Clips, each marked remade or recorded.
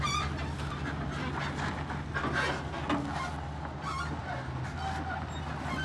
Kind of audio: recorded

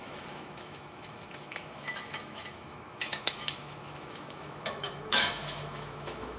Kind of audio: remade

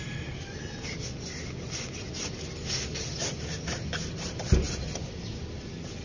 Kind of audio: recorded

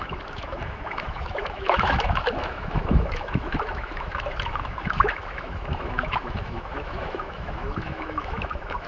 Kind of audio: remade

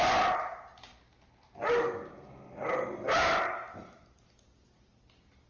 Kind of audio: recorded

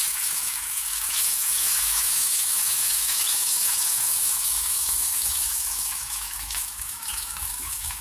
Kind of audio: remade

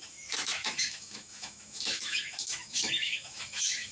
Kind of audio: remade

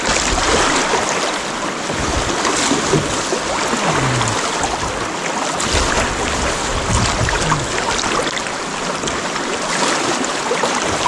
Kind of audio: recorded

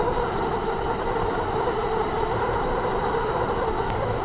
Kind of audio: recorded